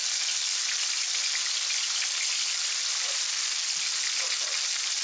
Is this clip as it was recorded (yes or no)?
yes